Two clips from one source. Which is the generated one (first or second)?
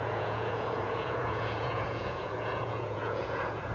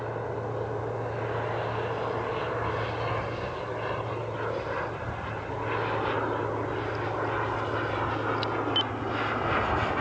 first